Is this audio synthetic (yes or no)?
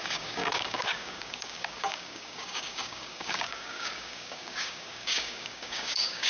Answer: yes